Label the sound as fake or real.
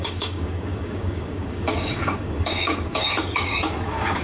fake